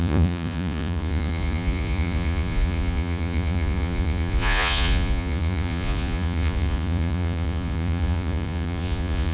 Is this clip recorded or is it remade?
remade